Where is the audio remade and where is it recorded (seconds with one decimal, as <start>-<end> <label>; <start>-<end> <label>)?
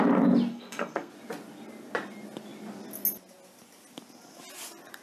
0.0-0.5 recorded; 0.5-1.1 remade; 1.1-5.0 recorded